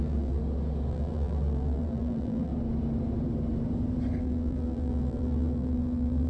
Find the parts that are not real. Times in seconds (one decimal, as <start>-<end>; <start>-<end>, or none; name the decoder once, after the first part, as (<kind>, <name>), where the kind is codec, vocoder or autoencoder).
0.0-0.4 (vocoder, BigVGAN v2); 0.9-2.5; 4.2-6.3